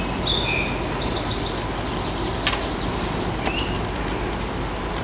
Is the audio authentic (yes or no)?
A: yes